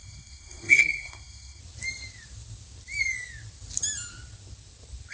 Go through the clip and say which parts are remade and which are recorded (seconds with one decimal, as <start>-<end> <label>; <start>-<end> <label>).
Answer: 0.0-1.6 remade; 1.6-5.1 recorded